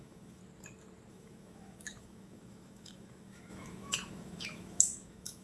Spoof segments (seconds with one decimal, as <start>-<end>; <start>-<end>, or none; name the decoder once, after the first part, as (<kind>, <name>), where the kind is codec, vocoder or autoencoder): 0.0-0.4 (autoencoder, DAC-VAE); 1.1-5.4